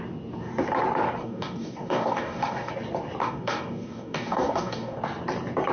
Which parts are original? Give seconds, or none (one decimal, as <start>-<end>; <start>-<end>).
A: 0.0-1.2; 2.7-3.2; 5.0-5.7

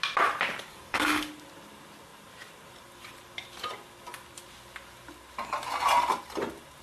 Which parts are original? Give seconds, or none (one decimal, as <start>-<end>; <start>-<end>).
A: 0.0-0.7; 1.3-6.8

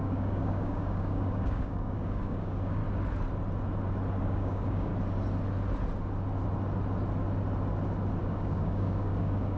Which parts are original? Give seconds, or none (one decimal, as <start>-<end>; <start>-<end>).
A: 2.8-4.2; 4.9-8.2

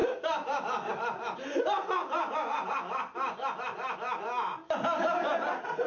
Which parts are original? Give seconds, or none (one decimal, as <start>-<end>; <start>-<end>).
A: 0.0-5.9

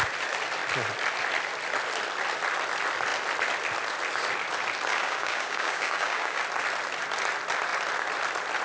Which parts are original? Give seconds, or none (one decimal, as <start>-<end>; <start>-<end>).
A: 0.0-4.9; 6.4-8.6

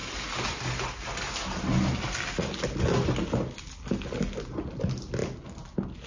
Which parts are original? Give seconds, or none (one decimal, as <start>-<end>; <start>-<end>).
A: 0.0-6.1